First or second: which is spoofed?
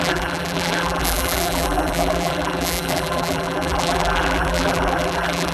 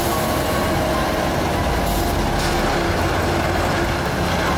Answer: first